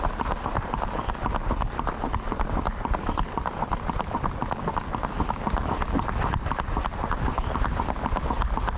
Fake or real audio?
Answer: real